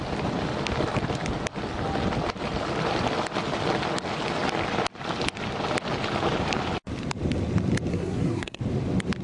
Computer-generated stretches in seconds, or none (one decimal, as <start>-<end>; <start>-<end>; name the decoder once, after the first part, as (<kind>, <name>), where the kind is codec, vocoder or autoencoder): 7.9-8.6 (codec, SNAC)